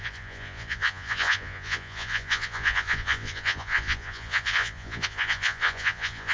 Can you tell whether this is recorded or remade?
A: remade